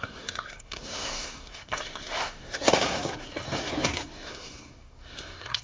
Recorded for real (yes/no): no